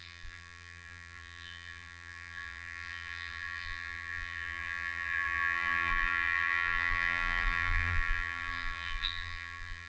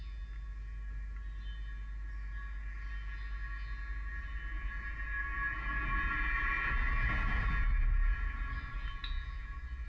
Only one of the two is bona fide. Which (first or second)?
second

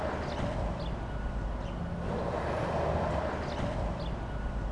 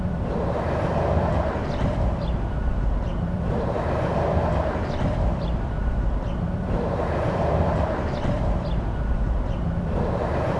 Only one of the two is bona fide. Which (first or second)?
first